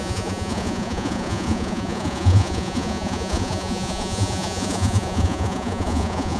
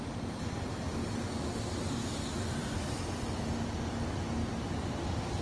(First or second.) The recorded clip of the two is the second